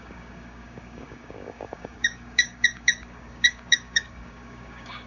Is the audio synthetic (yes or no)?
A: yes